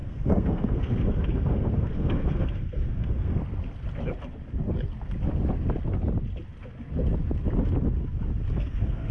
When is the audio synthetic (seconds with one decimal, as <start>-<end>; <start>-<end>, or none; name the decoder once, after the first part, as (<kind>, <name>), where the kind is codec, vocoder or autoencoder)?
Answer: 0.0-3.4 (codec, SNAC); 8.5-9.1